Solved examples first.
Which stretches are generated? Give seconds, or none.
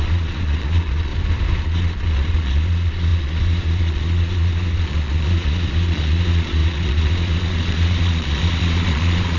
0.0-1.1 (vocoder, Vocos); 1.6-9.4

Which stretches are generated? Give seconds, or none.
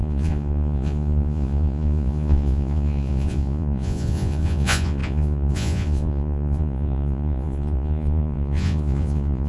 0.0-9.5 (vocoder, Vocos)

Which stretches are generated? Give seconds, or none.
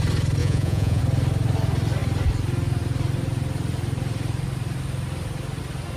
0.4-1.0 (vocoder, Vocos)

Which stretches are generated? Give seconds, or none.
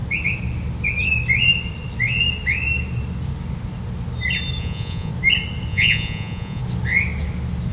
4.6-5.1 (vocoder, Vocos); 5.7-6.6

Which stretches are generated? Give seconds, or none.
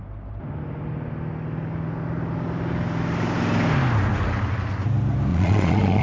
5.3-6.0 (vocoder, Vocos)